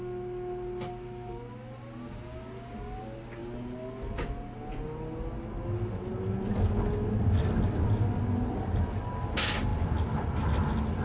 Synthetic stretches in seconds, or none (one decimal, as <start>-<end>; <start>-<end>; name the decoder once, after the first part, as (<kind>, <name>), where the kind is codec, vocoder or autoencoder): none

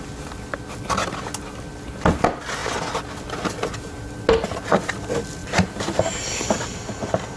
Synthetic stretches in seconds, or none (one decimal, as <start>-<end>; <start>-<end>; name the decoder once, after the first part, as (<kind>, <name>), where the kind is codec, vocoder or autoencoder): 5.4-6.2 (vocoder, BigVGAN v2)

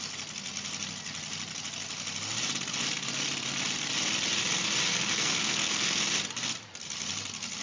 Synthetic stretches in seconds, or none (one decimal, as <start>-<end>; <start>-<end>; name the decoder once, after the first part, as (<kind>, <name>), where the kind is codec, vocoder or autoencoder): 4.9-6.0 (codec, SNAC)

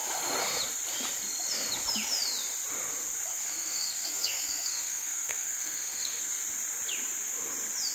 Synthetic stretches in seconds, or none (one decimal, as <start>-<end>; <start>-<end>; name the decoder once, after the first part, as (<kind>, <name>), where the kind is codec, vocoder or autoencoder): 3.3-6.4 (codec, SNAC)

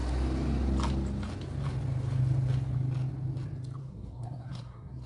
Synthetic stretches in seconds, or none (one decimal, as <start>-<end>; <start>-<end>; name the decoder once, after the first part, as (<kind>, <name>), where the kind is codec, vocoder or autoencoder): 3.8-5.1 (codec, SNAC)

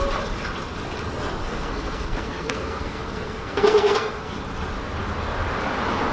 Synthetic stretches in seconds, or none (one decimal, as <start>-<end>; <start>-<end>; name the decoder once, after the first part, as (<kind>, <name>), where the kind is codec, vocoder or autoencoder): 1.4-4.4 (codec, SNAC)

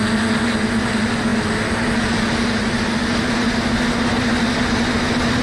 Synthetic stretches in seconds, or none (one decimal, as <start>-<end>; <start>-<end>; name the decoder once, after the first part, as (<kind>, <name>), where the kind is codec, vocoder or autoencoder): none